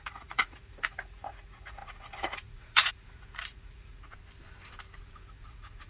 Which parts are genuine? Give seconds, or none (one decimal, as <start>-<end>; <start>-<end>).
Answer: 4.1-5.0